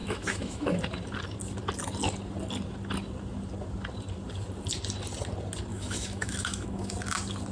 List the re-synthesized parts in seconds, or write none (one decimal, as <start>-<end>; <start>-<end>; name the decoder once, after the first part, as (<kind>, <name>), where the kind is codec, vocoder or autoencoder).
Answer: 0.0-0.8 (autoencoder, DAC-VAE); 5.7-6.9